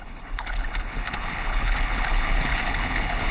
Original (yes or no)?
no